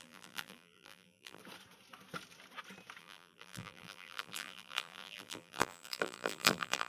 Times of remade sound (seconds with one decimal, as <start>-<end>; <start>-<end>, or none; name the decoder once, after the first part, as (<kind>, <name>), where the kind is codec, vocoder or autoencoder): 0.0-1.4 (vocoder, BigVGAN v2); 3.0-6.9